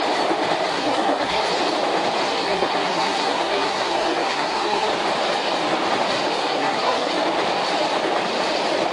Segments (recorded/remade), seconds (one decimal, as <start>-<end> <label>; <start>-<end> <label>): 0.0-0.7 recorded; 0.7-1.4 remade; 1.4-2.2 recorded; 2.2-4.9 remade; 4.9-6.4 recorded; 6.4-7.1 remade; 7.1-8.9 recorded